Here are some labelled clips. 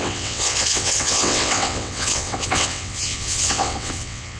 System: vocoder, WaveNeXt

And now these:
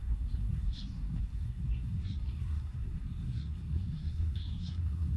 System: codec, SNAC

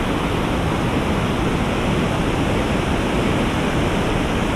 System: none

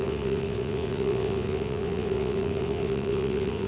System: vocoder, WaveNeXt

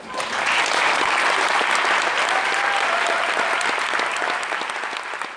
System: none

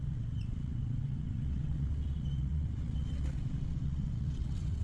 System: vocoder, WaveNeXt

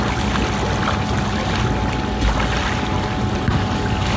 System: none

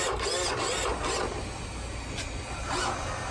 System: none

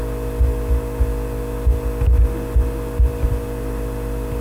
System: none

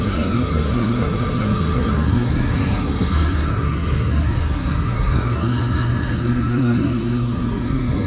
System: codec, SNAC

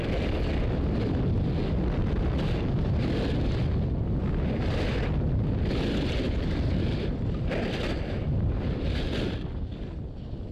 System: none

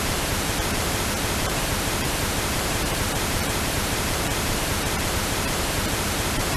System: vocoder, BigVGAN v2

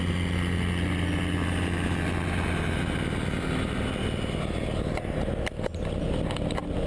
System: none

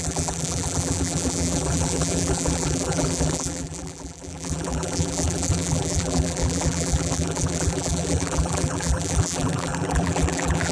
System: vocoder, BigVGAN v2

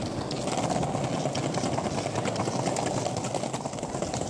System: none